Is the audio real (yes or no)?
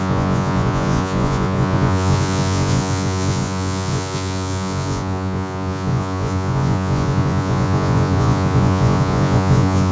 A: no